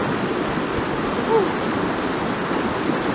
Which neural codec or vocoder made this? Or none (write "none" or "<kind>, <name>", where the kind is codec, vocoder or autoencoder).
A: none